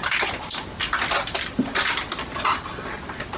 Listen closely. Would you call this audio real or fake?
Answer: real